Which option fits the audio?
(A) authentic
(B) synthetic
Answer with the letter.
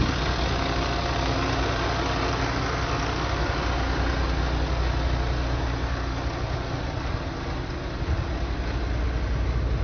A